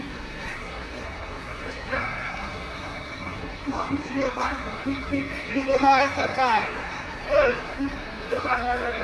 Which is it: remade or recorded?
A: remade